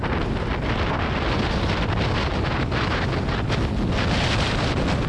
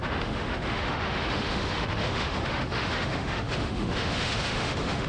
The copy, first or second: second